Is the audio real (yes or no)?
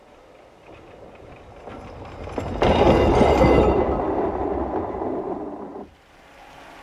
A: yes